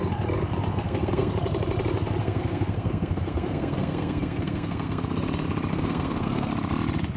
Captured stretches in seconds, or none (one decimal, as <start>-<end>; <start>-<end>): 0.0-0.7; 1.3-2.2; 5.0-5.7; 6.5-7.2

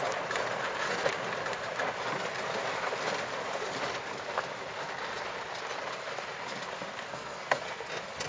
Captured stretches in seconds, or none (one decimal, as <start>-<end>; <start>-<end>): 0.0-7.1; 7.9-8.3

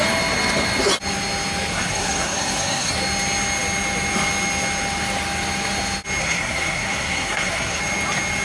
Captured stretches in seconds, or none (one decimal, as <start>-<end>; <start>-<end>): 0.0-1.7; 3.0-6.2; 7.8-8.4

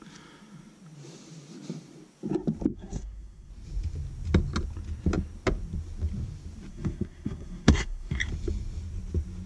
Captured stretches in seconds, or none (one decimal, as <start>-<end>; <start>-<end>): 0.0-2.7; 3.5-6.7; 8.2-9.5

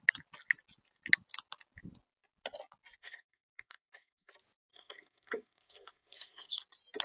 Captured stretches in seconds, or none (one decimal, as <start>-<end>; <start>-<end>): 0.0-3.0; 4.3-4.7; 6.5-7.0

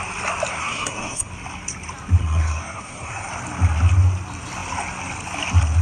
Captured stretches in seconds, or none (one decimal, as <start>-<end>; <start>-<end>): 0.0-0.5; 1.3-2.2; 3.3-5.8